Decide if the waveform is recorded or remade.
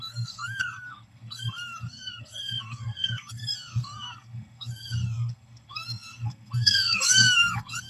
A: remade